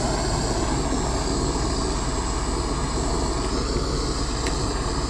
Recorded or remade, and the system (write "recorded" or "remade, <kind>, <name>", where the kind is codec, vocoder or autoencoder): recorded